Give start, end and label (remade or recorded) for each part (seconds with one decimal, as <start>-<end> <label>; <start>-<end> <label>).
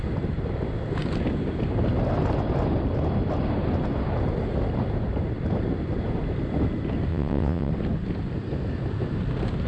0.0-7.1 recorded; 7.1-7.7 remade; 7.7-9.7 recorded